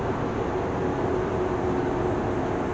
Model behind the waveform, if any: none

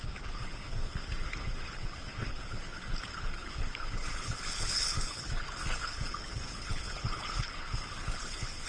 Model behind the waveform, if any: codec, HILCodec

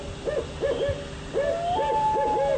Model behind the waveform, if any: none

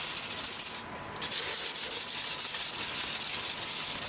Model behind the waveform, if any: none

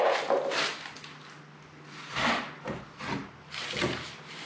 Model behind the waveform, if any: none